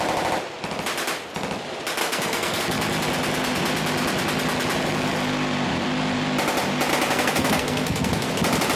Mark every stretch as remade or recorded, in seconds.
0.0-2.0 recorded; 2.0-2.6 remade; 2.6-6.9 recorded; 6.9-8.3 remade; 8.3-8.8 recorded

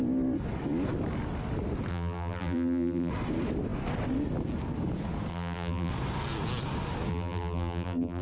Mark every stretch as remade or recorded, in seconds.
0.0-1.9 recorded; 1.9-3.1 remade; 3.1-5.3 recorded; 5.3-5.9 remade; 5.9-7.1 recorded; 7.1-8.2 remade

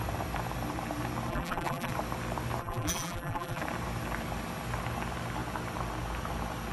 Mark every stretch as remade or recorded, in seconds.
0.0-1.3 recorded; 1.3-1.9 remade; 1.9-2.6 recorded; 2.6-3.6 remade; 3.6-6.7 recorded

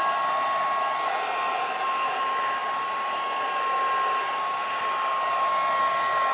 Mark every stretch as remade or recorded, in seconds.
0.0-6.3 recorded

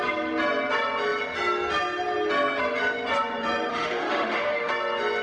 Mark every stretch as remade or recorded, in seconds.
0.0-3.7 recorded; 3.7-4.7 remade; 4.7-5.2 recorded

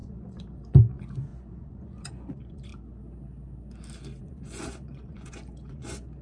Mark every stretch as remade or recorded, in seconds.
0.0-2.7 remade; 2.7-4.2 recorded; 4.2-6.2 remade

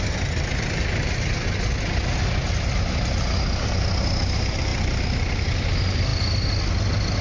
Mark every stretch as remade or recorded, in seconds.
0.0-7.2 recorded